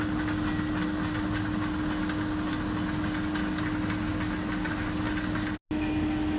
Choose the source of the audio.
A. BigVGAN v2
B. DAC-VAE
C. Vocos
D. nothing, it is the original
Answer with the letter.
D